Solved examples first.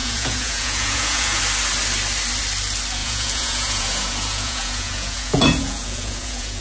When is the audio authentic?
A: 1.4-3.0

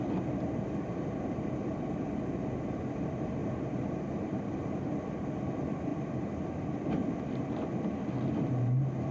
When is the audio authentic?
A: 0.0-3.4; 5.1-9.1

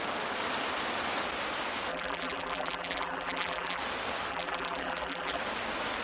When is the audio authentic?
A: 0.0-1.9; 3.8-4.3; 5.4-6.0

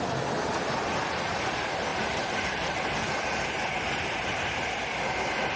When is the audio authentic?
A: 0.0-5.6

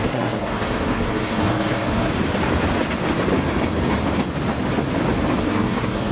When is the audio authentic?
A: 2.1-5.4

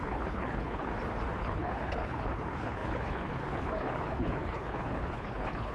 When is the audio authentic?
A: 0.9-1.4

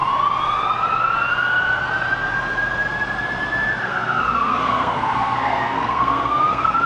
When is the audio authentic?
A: 0.0-3.8

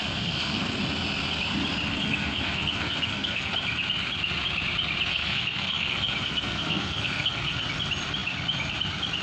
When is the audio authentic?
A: 0.8-1.9; 3.5-5.1; 7.6-9.2